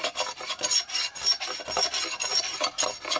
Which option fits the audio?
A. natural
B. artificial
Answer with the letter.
A